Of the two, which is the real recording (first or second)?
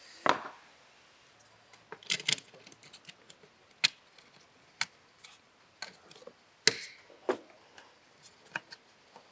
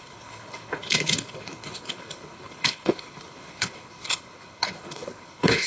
first